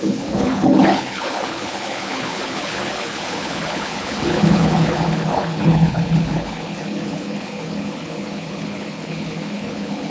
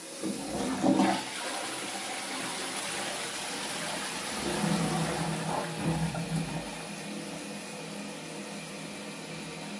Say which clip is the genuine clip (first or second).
second